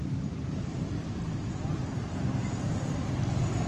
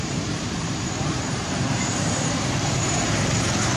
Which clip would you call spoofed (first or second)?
second